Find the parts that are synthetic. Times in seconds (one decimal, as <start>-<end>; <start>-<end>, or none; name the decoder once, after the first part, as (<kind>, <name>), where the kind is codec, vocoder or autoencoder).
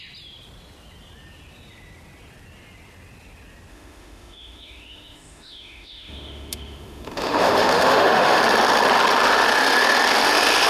3.7-8.4 (autoencoder, DAC-VAE)